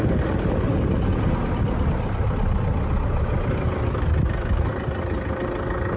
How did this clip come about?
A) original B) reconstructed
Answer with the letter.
A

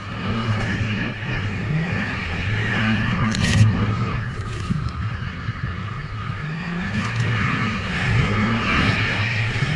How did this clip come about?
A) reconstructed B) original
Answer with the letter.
A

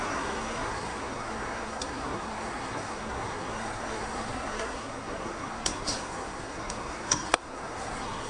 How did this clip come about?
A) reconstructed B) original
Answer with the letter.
A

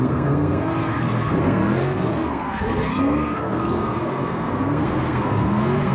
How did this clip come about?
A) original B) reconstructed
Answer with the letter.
B